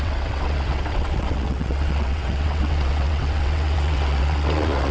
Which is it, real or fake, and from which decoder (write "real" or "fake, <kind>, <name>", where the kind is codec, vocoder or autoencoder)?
fake, vocoder, WaveNeXt